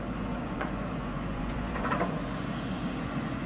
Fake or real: fake